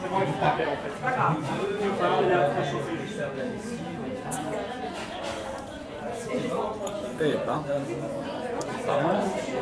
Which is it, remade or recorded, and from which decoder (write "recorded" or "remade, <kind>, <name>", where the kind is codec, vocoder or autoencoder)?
remade, vocoder, Vocos